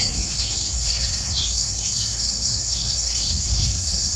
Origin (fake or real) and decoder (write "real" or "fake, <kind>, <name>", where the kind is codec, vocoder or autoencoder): fake, codec, SNAC